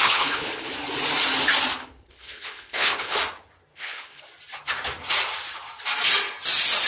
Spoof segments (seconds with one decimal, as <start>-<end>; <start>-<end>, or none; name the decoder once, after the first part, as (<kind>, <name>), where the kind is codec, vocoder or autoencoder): 0.0-0.7 (codec, HILCodec); 1.8-3.2; 3.7-4.2